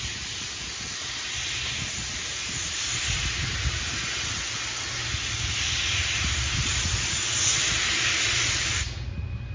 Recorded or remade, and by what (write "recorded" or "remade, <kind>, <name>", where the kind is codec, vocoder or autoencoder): recorded